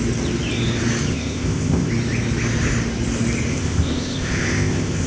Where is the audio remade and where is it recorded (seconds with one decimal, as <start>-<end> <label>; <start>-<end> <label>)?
0.0-1.1 recorded; 1.1-1.9 remade; 1.9-3.5 recorded; 3.5-5.1 remade